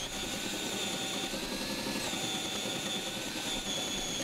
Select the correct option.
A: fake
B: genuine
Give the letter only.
B